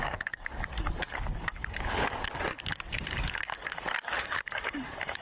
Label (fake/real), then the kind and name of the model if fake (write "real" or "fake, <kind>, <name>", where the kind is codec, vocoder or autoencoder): fake, codec, DAC